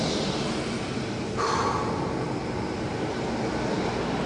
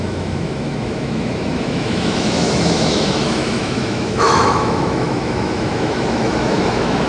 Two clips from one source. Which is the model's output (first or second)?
second